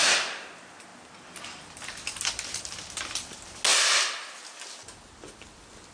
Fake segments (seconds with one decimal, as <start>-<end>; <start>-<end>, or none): none